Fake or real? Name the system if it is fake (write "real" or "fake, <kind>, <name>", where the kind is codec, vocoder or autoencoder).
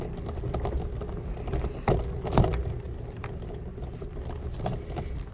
real